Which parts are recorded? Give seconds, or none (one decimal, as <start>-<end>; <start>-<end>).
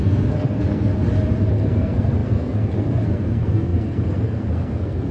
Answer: 0.9-1.5